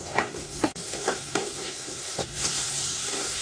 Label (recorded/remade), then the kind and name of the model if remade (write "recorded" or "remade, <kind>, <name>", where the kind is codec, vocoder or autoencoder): remade, codec, SNAC